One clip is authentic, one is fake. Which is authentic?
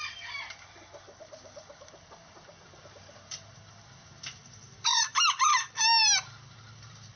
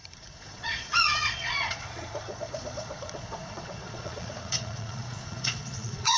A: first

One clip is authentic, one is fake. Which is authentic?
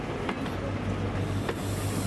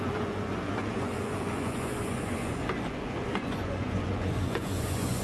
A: first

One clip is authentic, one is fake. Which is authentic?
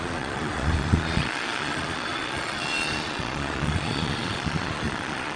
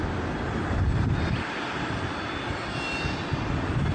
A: second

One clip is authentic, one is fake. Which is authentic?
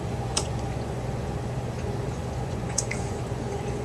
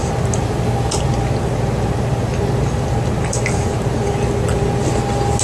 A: second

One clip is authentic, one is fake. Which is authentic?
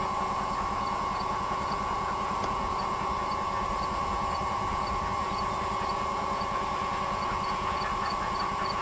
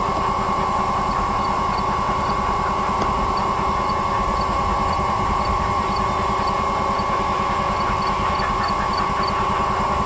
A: second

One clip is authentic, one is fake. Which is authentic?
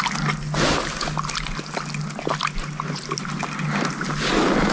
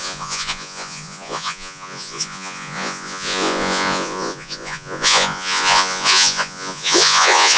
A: first